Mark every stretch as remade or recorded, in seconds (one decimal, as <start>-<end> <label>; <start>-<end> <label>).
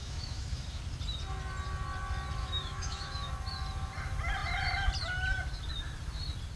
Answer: 0.0-0.8 remade; 0.8-2.4 recorded; 2.4-3.3 remade; 3.3-6.6 recorded